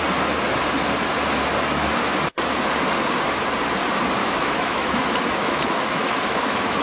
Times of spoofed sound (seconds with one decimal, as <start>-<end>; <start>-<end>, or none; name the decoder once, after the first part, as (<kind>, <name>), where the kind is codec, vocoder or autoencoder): 4.2-5.0 (autoencoder, DAC-VAE); 5.4-6.8